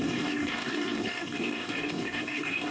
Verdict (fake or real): fake